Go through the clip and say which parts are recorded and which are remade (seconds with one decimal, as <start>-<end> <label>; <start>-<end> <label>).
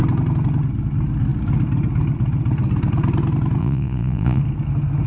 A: 0.0-3.6 recorded; 3.6-4.4 remade; 4.4-5.1 recorded